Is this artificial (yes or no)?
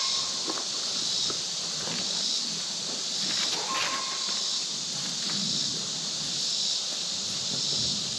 no